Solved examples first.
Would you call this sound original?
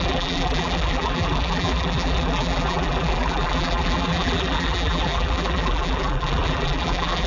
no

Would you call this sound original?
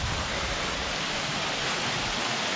yes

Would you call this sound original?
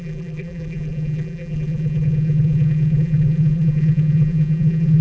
no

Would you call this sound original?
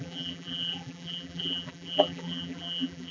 no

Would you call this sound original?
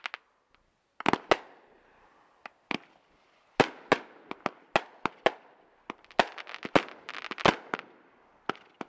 yes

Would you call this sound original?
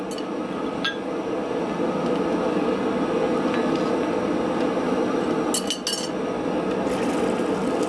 yes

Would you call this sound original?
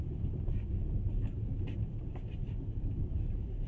no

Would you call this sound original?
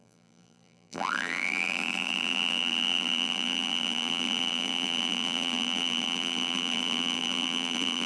no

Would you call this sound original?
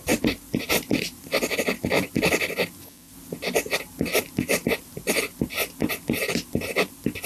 no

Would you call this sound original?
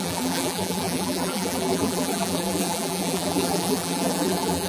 no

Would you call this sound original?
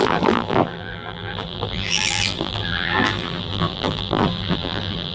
no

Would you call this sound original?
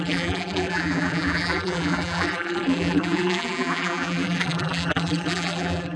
no